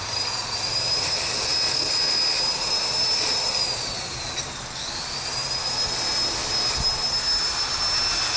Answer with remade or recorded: recorded